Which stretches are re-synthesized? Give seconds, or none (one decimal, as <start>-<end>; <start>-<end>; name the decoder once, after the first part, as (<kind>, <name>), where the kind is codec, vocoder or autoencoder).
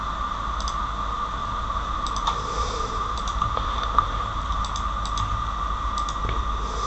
1.4-4.6 (vocoder, BigVGAN v2)